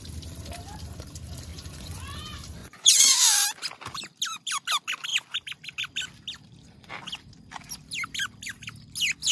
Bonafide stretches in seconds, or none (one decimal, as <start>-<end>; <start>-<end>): 0.0-1.5; 2.0-2.6; 3.2-9.3